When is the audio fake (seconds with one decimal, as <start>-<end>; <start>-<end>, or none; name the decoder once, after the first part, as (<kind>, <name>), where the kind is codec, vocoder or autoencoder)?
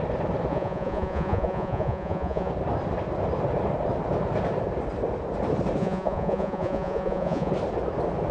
0.5-2.5 (vocoder, Vocos); 5.8-7.5